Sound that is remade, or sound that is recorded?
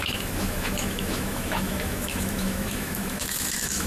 remade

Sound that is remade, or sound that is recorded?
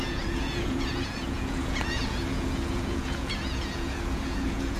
remade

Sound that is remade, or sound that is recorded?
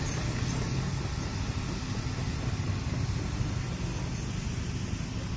recorded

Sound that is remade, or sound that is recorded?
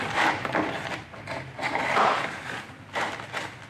recorded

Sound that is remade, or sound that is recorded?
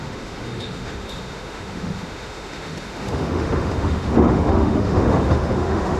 remade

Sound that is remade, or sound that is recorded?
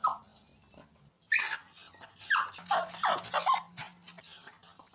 recorded